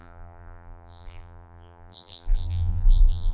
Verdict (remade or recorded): remade